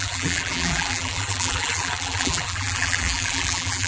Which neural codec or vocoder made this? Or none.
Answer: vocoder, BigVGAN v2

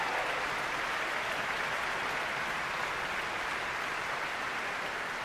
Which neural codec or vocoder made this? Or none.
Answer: none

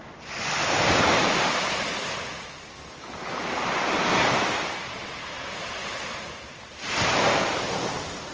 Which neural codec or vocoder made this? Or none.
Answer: vocoder, BigVGAN v2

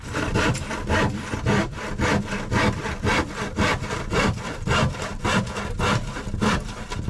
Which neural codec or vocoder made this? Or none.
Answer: none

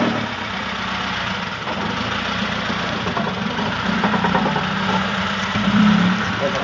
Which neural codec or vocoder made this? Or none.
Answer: vocoder, BigVGAN v2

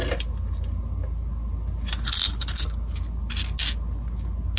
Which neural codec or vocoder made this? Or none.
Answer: none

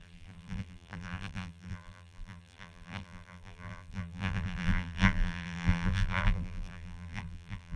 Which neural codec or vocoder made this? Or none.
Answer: vocoder, BigVGAN v2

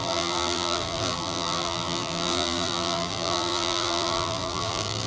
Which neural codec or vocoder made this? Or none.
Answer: vocoder, BigVGAN v2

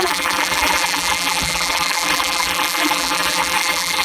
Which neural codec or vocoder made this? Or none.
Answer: vocoder, BigVGAN v2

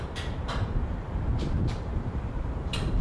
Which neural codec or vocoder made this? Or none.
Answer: vocoder, BigVGAN v2